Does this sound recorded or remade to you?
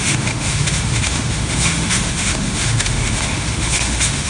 remade